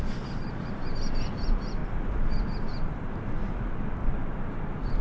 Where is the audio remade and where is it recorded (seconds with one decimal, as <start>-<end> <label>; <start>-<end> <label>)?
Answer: 0.0-5.0 recorded